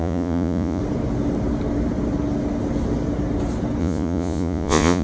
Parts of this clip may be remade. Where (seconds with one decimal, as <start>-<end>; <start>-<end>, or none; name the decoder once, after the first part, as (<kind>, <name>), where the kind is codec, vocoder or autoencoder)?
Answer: 0.0-0.8 (vocoder, Vocos); 3.8-5.0

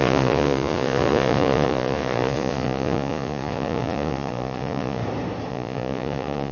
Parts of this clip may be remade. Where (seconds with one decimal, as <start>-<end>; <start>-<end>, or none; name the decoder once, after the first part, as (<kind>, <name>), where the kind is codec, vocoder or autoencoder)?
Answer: 0.0-5.0 (vocoder, Vocos); 5.5-6.5